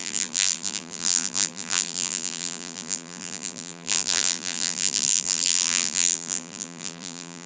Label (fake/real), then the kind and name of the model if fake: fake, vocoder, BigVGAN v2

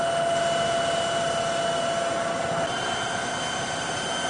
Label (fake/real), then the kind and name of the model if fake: real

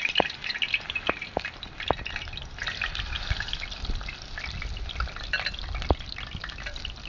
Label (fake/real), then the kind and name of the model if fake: real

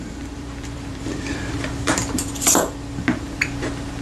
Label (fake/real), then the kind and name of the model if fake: fake, vocoder, BigVGAN v2